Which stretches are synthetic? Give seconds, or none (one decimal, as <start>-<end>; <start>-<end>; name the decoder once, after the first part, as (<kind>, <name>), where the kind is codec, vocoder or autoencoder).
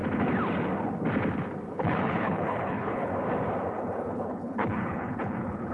1.7-3.1 (codec, HILCodec); 3.7-5.7